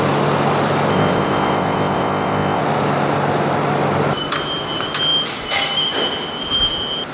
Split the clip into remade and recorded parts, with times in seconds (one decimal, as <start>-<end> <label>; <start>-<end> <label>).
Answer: 0.0-0.9 recorded; 0.9-2.6 remade; 2.6-7.1 recorded